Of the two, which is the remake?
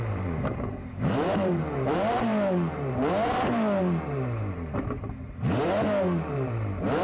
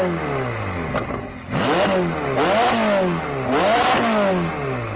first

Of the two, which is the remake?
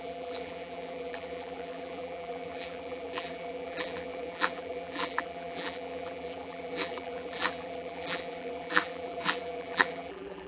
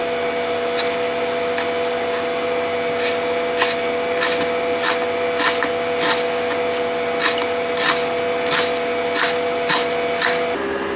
first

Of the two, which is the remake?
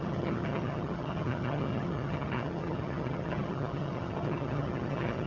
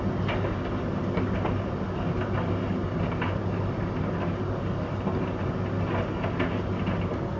first